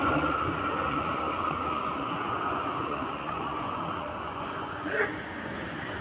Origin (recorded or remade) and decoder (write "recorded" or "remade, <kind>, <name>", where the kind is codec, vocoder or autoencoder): remade, vocoder, Vocos